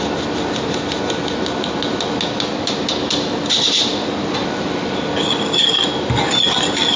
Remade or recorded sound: recorded